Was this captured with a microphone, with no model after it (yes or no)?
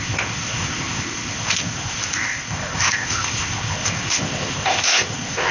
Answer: no